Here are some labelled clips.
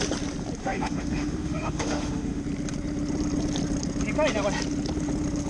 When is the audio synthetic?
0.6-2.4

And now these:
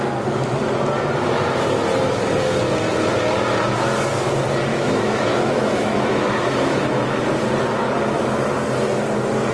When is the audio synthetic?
4.7-7.2

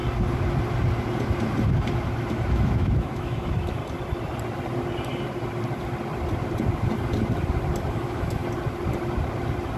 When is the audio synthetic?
2.5-3.8; 7.9-8.4

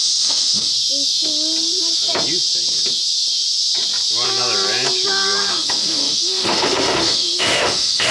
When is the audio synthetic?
0.0-0.7; 5.5-8.1

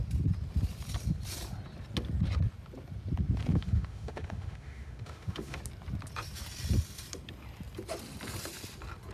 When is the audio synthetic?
3.5-5.6

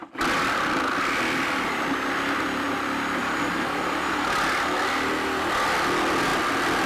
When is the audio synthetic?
none